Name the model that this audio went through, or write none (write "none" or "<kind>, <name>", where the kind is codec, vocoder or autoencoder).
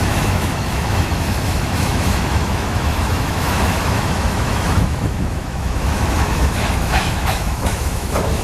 autoencoder, DAC-VAE